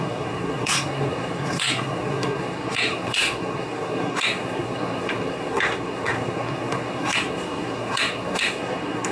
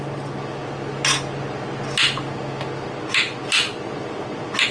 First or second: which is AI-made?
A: first